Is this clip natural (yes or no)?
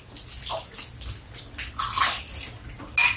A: yes